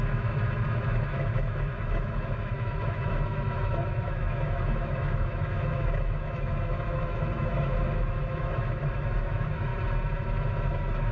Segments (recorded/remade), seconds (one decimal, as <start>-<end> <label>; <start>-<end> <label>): 0.0-9.7 remade; 9.7-10.7 recorded; 10.7-11.1 remade